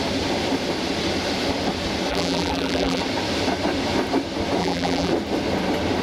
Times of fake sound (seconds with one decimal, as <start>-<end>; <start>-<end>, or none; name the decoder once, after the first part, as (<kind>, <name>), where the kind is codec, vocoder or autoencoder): 2.1-3.0 (vocoder, BigVGAN v2); 4.6-5.1